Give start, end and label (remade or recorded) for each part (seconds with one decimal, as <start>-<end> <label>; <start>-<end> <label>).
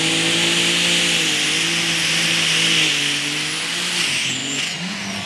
0.0-4.4 recorded; 4.4-5.3 remade